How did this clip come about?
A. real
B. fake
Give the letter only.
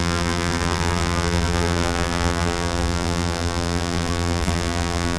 B